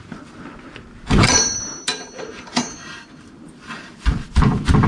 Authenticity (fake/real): fake